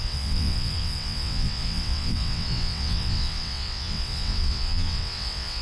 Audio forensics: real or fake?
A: fake